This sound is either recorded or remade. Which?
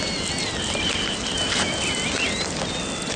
recorded